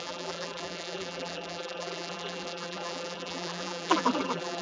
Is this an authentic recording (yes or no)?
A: no